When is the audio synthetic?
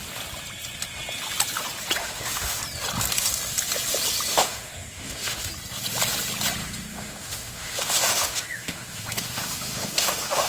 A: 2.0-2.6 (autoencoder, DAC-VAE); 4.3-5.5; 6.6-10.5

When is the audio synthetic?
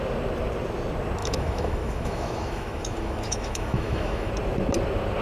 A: 1.2-4.3 (autoencoder, DAC-VAE)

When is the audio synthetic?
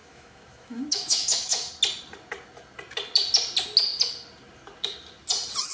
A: 0.0-1.7 (autoencoder, DAC-VAE)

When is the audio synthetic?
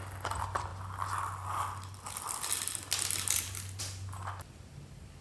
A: none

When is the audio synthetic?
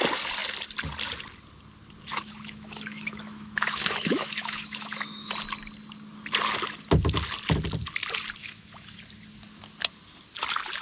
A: 2.1-5.3 (autoencoder, DAC-VAE); 8.4-9.0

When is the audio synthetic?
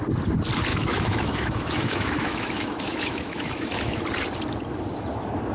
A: 0.7-4.0 (autoencoder, DAC-VAE)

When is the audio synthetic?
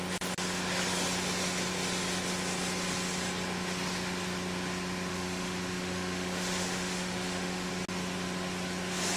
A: 5.1-7.7 (autoencoder, DAC-VAE)